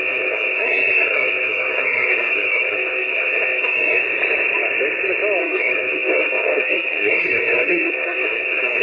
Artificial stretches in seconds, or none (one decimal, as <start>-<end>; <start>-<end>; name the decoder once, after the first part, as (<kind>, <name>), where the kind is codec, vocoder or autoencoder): 0.0-4.0 (codec, SNAC); 5.4-8.8